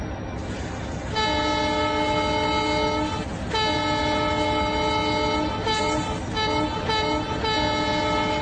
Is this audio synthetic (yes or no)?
no